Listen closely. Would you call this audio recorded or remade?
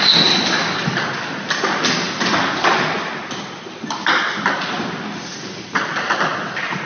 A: recorded